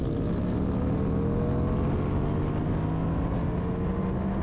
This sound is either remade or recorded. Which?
recorded